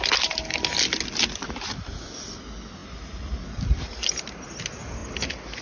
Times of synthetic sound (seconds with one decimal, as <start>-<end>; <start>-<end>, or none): none